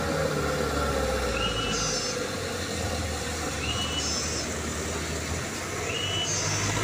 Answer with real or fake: real